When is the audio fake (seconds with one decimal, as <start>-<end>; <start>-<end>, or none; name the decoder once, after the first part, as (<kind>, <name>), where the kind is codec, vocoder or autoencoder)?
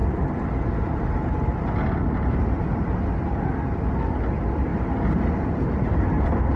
none